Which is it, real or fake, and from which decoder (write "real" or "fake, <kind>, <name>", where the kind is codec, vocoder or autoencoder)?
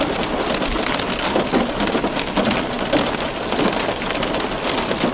real